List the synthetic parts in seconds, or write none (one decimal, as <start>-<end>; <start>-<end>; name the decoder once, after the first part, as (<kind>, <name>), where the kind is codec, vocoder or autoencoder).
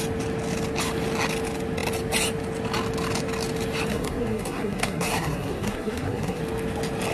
3.9-6.4 (codec, SNAC)